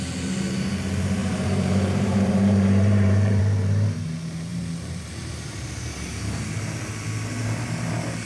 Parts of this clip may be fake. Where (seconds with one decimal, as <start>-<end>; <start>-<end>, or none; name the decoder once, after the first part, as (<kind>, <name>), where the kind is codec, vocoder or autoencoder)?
1.2-3.4 (vocoder, BigVGAN v2); 4.5-6.2